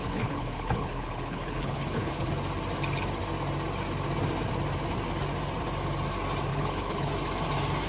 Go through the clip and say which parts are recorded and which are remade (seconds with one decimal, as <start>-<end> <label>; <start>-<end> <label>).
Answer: 0.0-2.3 remade; 2.3-6.5 recorded; 6.5-7.1 remade; 7.1-7.9 recorded